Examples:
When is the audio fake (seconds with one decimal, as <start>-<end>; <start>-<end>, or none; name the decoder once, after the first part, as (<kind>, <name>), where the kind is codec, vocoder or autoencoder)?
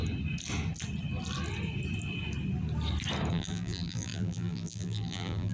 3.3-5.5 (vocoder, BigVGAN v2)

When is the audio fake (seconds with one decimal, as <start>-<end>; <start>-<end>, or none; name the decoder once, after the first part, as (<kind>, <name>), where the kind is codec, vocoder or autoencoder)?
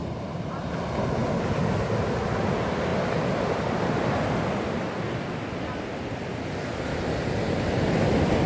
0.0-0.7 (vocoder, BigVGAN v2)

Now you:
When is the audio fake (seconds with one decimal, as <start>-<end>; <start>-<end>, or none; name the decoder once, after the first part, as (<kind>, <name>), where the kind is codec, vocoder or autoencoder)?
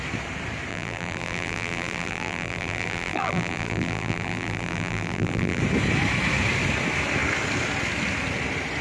0.7-5.6 (vocoder, BigVGAN v2)